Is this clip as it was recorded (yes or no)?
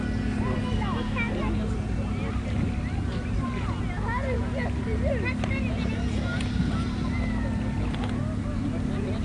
yes